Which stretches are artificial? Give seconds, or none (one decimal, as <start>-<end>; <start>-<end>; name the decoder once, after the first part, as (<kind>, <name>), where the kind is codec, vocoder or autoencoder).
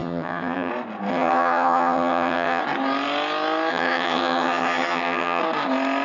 0.0-0.7 (vocoder, HiFi-GAN); 1.1-2.6; 3.7-5.4